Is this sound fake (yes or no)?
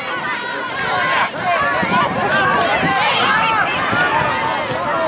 no